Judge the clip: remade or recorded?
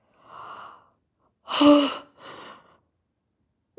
recorded